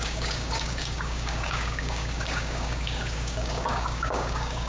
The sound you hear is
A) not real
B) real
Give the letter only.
A